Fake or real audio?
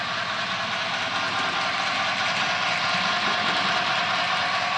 real